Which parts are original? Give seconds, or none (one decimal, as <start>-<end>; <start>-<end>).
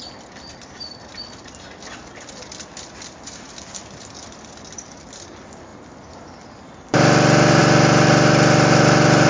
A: 0.0-9.3